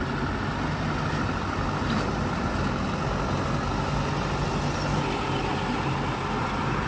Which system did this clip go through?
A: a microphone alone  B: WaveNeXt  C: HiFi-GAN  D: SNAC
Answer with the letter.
A